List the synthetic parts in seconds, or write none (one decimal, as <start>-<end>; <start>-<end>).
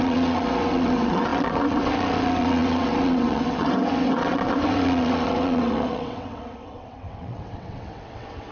0.0-8.5